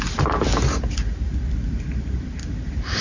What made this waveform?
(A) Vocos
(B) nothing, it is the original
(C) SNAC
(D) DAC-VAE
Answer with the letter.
B